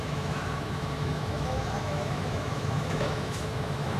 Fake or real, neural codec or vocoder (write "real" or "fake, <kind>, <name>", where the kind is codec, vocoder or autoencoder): fake, autoencoder, DAC-VAE